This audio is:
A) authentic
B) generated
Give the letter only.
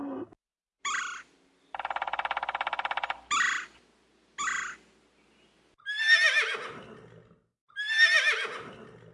A